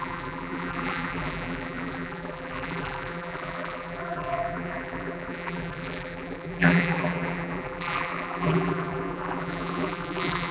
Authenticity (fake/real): fake